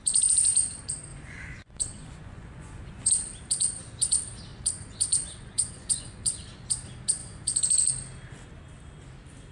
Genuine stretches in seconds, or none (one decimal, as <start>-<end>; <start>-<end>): 0.0-1.1; 3.1-4.5; 6.4-7.2; 7.9-9.5